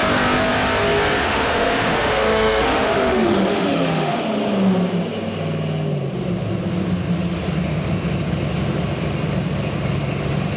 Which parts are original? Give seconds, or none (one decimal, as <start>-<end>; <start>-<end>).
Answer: 0.0-1.2; 4.2-10.6